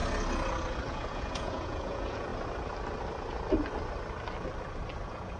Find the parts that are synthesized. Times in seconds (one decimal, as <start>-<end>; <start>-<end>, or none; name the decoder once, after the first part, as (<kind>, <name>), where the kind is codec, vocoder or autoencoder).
0.9-2.3 (vocoder, Vocos); 5.0-5.4

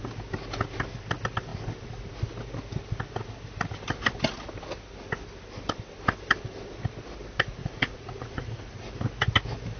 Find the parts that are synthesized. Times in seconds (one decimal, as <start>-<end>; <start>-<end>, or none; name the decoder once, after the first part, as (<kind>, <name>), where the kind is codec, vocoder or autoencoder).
7.6-8.8 (vocoder, Vocos)

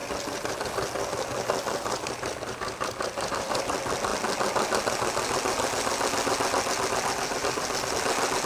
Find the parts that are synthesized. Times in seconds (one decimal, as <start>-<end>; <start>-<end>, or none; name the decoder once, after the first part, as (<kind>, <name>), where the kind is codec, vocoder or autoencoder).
none

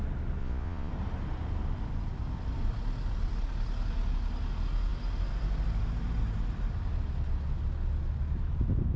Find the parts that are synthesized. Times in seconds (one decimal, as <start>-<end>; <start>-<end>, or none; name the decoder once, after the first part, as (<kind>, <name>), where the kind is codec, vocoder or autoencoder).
0.4-0.9 (vocoder, Vocos)